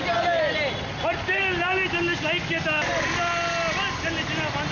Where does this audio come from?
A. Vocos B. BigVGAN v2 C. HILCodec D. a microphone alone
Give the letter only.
D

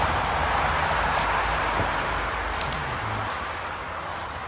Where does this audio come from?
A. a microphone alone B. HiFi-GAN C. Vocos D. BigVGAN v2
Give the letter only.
A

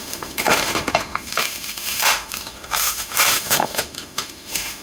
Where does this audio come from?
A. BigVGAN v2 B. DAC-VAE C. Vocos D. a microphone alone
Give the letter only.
B